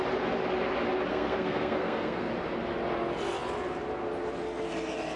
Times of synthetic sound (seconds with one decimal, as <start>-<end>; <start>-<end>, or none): 1.1-2.3